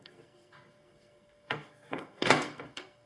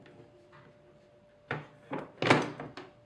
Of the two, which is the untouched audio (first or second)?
second